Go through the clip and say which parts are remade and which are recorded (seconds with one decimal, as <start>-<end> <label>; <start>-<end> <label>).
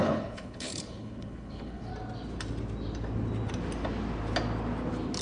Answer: 0.0-1.9 remade; 1.9-5.2 recorded